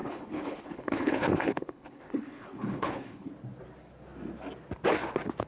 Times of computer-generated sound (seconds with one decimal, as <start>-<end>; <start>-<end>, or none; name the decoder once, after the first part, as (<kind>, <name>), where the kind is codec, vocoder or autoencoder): 0.0-3.3 (codec, HILCodec)